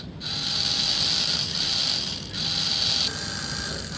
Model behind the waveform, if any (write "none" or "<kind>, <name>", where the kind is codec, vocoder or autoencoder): none